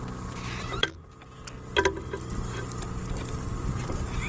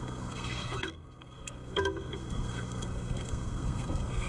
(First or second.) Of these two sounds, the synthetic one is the second